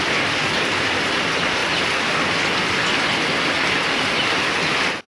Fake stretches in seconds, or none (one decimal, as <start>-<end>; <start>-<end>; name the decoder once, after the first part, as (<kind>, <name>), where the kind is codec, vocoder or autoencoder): none